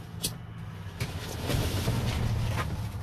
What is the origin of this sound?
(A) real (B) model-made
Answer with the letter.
A